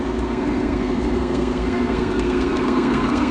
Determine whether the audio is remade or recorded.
remade